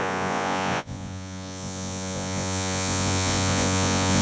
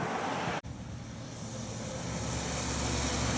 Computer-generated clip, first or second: first